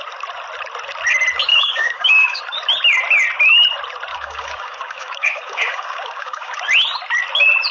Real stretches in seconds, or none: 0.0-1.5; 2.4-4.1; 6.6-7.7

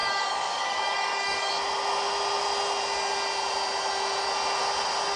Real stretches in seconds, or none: 1.5-5.2

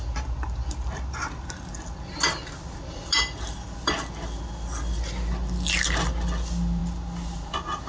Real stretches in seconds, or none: 0.0-7.9

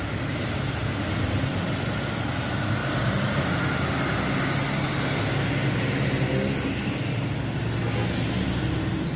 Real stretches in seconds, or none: 0.0-9.2

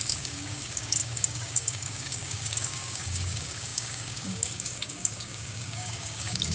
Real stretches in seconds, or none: none

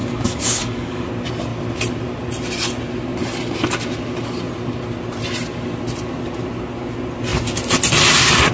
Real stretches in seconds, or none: 1.1-8.5

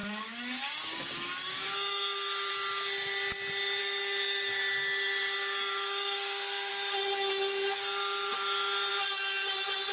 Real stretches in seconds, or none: 2.5-3.8; 6.7-9.9